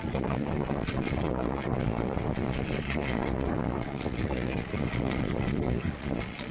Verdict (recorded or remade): remade